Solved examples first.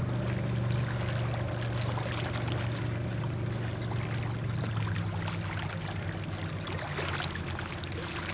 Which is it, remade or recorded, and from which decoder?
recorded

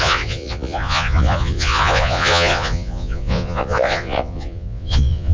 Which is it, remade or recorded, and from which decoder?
remade, vocoder, Vocos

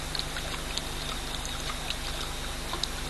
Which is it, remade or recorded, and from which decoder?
recorded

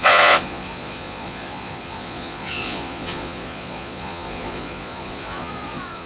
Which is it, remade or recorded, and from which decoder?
remade, vocoder, Vocos